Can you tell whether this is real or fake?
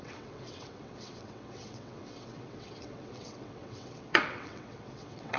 fake